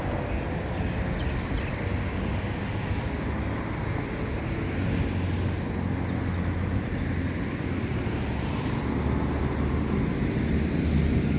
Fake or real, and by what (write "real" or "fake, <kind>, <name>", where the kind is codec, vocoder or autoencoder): real